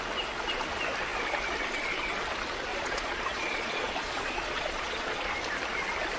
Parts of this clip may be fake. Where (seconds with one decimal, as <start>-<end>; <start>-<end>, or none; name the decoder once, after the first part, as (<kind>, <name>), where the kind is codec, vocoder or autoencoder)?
2.7-5.3 (vocoder, Vocos)